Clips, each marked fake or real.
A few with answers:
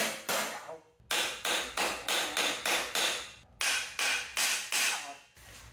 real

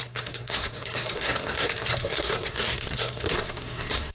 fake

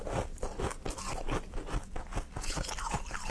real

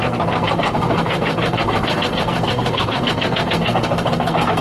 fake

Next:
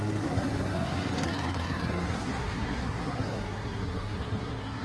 fake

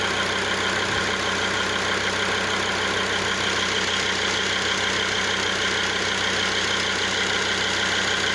real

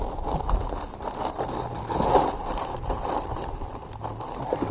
real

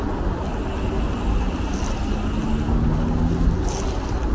real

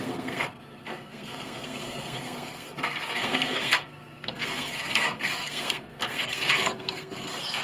fake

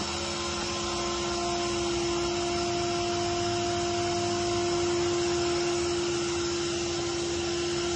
real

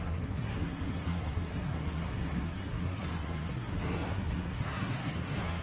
fake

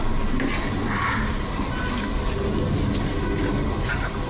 real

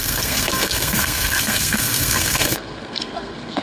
fake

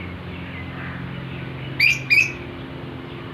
real